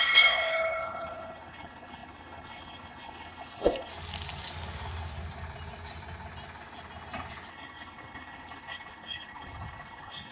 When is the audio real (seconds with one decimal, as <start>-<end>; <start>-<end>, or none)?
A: 3.9-7.5